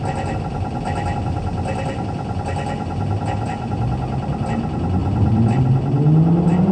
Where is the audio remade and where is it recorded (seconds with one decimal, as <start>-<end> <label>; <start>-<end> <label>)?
0.0-5.0 recorded; 5.0-5.6 remade; 5.6-6.7 recorded